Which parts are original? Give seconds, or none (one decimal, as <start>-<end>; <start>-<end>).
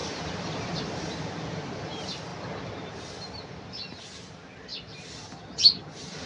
0.8-4.7; 5.4-6.3